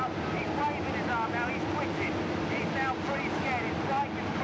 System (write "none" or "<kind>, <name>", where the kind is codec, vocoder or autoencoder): none